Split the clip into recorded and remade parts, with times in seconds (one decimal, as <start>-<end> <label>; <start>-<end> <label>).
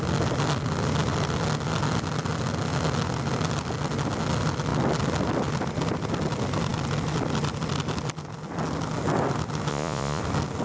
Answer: 0.0-9.7 recorded; 9.7-10.2 remade; 10.2-10.6 recorded